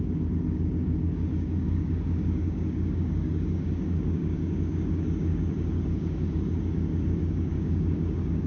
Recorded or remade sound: remade